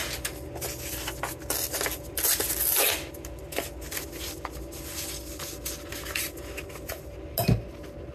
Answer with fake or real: real